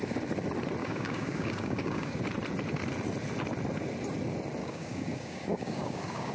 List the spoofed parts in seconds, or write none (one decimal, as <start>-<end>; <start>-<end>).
0.8-2.2; 4.6-6.3